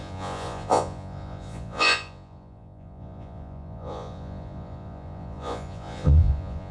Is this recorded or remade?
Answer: remade